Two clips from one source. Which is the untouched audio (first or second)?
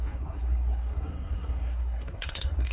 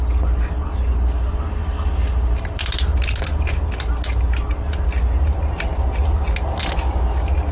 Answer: second